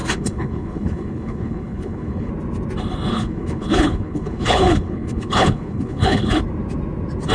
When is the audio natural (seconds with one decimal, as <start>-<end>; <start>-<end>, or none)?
2.3-3.1; 6.4-7.3